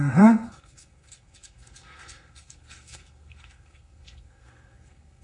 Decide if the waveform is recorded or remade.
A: remade